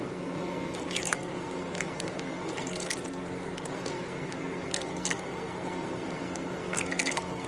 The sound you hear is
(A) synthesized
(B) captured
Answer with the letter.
A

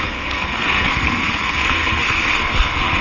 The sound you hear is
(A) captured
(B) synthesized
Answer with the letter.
B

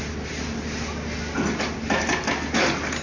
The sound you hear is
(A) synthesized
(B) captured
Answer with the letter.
B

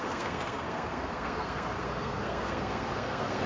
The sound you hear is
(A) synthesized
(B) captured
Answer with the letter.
A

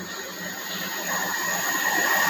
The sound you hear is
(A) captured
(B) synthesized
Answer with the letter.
A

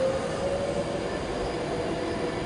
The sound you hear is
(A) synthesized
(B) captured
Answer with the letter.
B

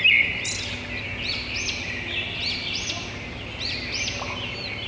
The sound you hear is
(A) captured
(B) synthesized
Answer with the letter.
A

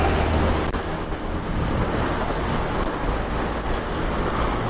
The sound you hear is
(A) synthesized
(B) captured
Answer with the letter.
B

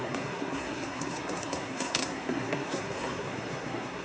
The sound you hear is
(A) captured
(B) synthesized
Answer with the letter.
B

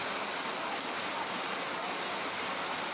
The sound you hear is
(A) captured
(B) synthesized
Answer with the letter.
A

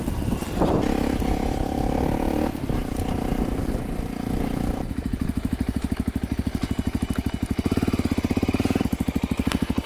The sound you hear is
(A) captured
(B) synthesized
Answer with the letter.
A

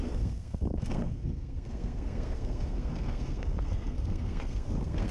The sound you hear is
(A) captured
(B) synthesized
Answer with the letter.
B